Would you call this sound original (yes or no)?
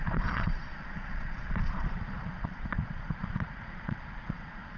no